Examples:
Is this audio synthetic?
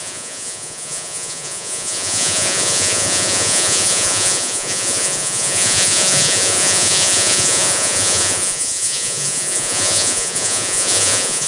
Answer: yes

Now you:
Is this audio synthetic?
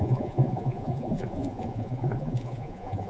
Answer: yes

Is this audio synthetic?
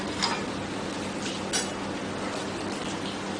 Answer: no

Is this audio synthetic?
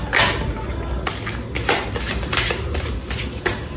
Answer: no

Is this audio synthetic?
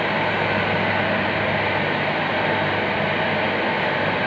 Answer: no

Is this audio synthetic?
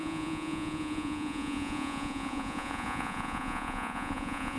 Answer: yes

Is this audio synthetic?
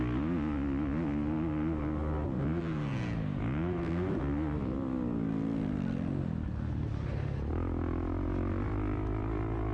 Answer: no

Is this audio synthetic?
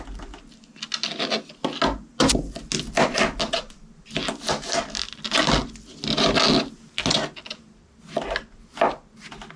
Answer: no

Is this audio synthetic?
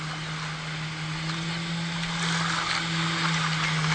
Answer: no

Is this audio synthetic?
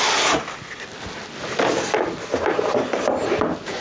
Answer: no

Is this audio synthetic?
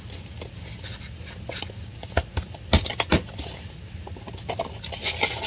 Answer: no